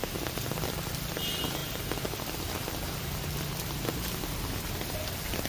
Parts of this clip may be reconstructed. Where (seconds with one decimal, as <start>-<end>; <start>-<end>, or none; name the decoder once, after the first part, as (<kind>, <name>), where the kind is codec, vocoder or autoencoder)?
0.6-1.6 (vocoder, BigVGAN v2); 4.9-5.5